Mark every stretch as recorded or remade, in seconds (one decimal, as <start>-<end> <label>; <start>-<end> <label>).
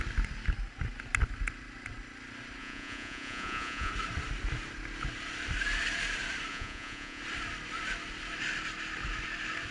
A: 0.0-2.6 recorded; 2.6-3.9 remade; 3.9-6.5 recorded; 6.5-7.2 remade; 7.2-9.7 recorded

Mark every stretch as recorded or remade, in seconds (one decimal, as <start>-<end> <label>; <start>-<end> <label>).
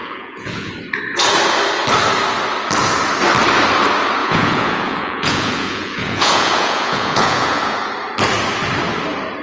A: 0.0-0.7 remade; 0.7-4.2 recorded; 4.2-7.9 remade; 7.9-9.4 recorded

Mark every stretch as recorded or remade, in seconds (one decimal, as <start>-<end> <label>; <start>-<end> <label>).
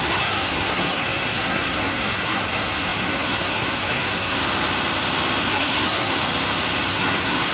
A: 0.0-4.4 remade; 4.4-5.4 recorded; 5.4-6.2 remade; 6.2-6.9 recorded; 6.9-7.5 remade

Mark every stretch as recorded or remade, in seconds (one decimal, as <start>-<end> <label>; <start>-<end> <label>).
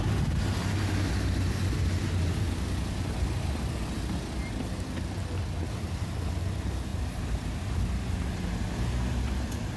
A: 0.0-6.9 recorded; 6.9-7.7 remade; 7.7-9.8 recorded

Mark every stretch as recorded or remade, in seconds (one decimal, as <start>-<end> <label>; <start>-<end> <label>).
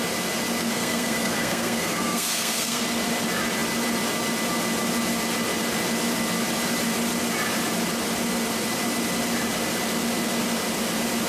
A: 0.0-0.6 recorded; 0.6-2.8 remade; 2.8-11.3 recorded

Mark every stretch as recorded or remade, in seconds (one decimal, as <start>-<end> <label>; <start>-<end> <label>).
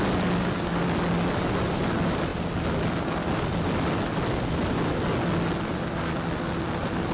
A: 0.0-7.1 recorded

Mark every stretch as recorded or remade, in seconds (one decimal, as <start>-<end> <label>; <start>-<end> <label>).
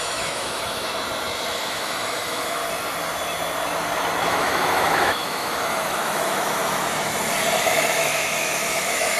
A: 0.0-0.9 remade; 0.9-1.5 recorded; 1.5-2.6 remade; 2.6-4.3 recorded; 4.3-6.6 remade; 6.6-7.6 recorded; 7.6-9.2 remade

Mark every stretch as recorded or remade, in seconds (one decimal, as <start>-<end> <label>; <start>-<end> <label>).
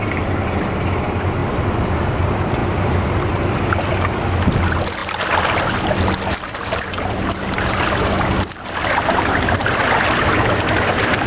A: 0.0-1.4 recorded; 1.4-2.2 remade; 2.2-6.5 recorded; 6.5-9.6 remade; 9.6-11.3 recorded